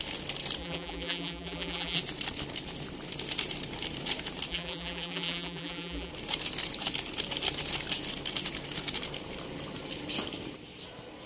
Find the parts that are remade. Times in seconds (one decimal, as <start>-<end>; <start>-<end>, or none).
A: 0.6-2.0; 4.5-6.1